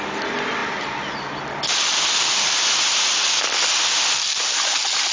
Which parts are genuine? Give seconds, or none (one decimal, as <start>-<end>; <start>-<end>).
0.0-5.1